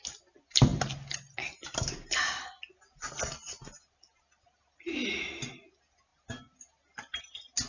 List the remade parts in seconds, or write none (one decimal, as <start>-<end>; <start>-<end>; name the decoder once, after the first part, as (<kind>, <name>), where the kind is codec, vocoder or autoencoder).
none